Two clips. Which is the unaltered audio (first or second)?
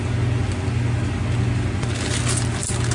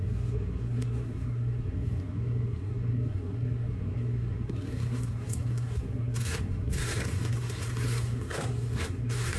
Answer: first